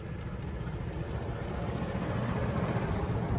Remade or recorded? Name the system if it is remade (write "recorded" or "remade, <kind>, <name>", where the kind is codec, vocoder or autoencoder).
recorded